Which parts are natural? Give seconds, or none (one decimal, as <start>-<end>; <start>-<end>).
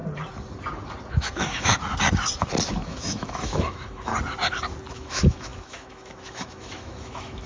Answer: 0.0-1.1; 1.7-2.7; 4.1-4.9